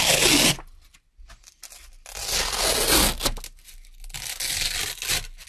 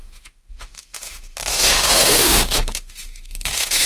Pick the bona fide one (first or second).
first